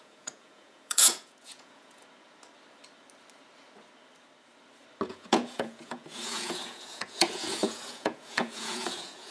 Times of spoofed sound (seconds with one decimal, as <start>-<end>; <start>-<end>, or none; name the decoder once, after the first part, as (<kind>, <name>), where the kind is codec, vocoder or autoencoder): 0.0-2.0 (vocoder, Vocos); 5.1-9.3